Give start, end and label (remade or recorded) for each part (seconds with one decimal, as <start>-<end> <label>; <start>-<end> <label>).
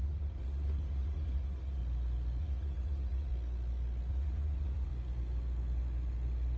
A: 0.0-1.8 remade; 1.8-2.4 recorded; 2.4-3.3 remade; 3.3-4.1 recorded; 4.1-4.9 remade; 4.9-6.6 recorded